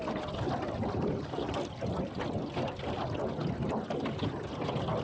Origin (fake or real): real